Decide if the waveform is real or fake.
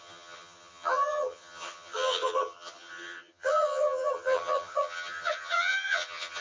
fake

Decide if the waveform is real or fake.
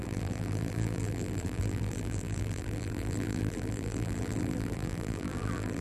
fake